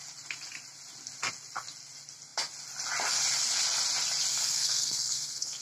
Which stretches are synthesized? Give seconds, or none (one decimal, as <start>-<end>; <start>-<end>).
4.3-5.6